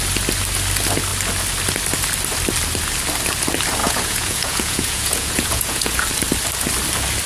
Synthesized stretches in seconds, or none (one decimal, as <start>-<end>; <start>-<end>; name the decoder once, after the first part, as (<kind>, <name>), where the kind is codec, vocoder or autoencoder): 3.8-6.0 (vocoder, Vocos)